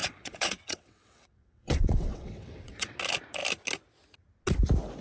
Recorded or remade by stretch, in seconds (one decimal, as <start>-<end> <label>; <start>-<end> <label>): 0.0-3.0 remade; 3.0-5.0 recorded